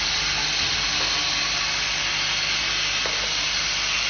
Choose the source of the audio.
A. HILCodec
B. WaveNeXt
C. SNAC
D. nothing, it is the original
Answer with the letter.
D